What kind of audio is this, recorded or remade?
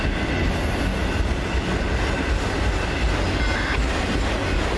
recorded